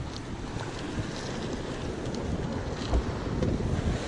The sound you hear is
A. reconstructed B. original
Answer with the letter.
B